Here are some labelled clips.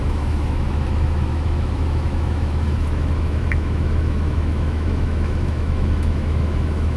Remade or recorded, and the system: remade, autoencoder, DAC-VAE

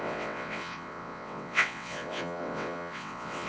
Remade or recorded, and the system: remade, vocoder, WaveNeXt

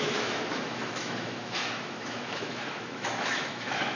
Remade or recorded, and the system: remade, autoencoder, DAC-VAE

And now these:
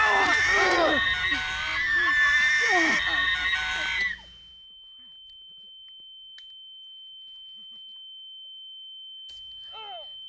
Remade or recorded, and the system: recorded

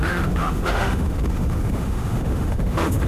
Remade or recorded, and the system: remade, autoencoder, DAC-VAE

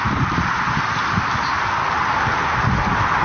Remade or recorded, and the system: recorded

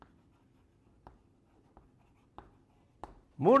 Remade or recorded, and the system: recorded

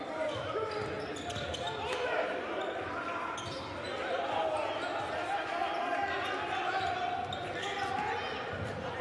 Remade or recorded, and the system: recorded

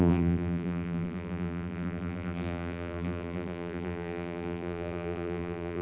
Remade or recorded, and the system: remade, vocoder, BigVGAN v2